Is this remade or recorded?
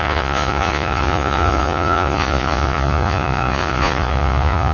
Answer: remade